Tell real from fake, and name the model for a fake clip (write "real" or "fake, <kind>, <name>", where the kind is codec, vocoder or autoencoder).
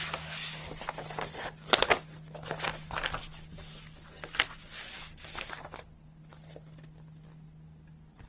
real